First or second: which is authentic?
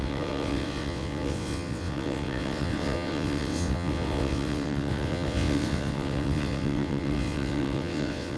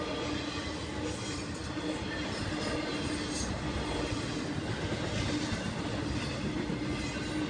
second